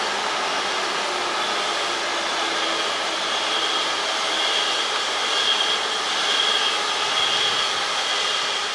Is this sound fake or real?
real